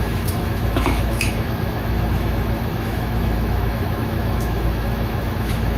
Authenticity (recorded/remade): remade